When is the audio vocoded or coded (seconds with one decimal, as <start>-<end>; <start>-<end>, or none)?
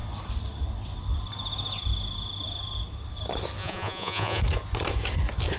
3.6-4.4